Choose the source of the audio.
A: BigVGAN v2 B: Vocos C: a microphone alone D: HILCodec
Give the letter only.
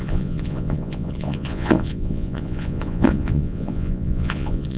B